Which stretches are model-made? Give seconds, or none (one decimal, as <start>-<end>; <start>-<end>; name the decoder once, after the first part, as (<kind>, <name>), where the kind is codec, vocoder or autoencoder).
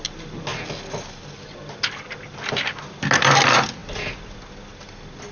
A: none